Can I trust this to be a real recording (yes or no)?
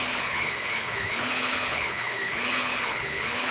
no